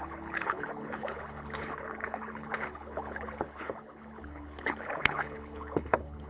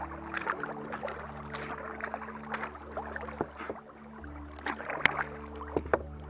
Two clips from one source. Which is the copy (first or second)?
first